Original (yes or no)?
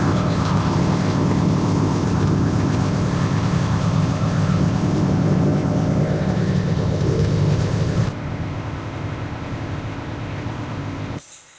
no